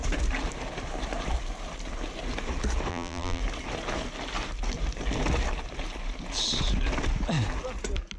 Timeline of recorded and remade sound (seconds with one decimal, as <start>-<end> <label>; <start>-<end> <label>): 0.0-2.9 recorded; 2.9-3.4 remade; 3.4-8.2 recorded